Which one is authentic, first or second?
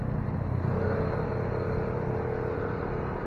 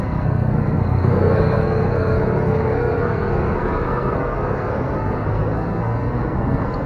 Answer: first